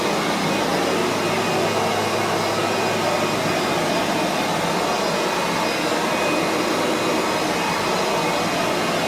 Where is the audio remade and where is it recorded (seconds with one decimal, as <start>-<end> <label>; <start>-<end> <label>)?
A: 0.0-2.6 recorded; 2.6-3.5 remade; 3.5-9.1 recorded